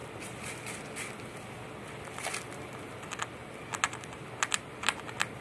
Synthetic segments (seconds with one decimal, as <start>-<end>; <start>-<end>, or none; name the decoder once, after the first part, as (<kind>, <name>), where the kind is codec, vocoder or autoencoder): none